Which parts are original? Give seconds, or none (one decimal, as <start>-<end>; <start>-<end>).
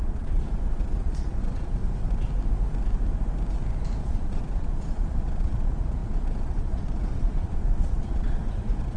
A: 1.8-4.0